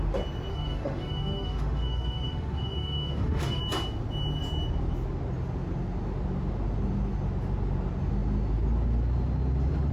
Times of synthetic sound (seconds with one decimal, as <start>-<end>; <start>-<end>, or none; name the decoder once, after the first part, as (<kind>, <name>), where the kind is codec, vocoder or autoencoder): 0.5-3.6 (autoencoder, DAC-VAE)